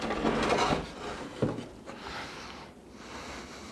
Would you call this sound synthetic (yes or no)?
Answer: no